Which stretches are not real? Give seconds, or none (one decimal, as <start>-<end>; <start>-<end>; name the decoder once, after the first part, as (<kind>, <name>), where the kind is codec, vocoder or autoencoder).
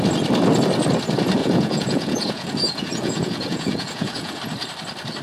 1.4-4.4 (vocoder, Vocos)